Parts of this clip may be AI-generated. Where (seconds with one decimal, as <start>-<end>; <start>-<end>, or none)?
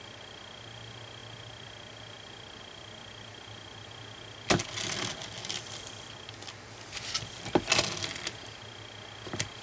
none